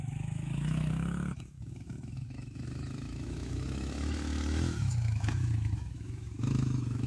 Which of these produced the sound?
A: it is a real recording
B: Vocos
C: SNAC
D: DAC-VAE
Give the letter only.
D